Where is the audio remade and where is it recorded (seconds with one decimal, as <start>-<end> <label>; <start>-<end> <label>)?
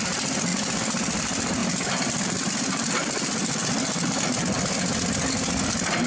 0.0-6.1 recorded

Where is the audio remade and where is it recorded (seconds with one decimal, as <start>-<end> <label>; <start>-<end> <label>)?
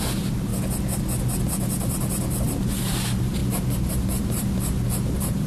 0.0-0.5 remade; 0.5-2.4 recorded; 2.4-3.4 remade; 3.4-3.9 recorded; 3.9-5.5 remade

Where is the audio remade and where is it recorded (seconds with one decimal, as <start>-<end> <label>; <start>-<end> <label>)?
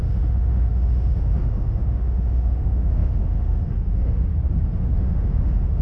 0.0-4.3 remade; 4.3-5.0 recorded; 5.0-5.8 remade